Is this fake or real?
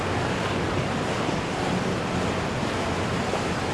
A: real